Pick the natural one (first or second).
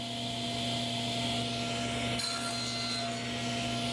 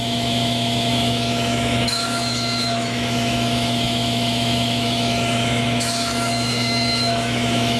first